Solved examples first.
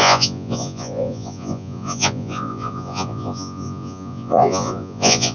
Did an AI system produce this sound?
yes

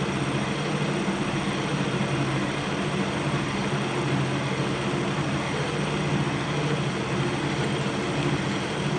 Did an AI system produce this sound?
no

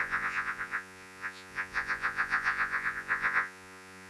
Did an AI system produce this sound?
yes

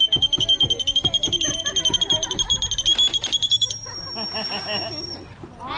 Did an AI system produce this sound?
no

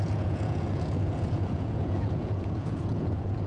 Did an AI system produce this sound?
yes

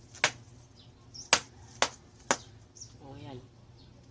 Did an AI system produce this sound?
no